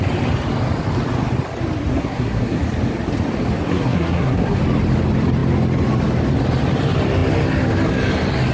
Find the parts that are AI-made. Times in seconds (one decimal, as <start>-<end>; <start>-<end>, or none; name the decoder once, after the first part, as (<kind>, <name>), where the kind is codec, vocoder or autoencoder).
1.9-2.6 (codec, SNAC); 3.7-4.6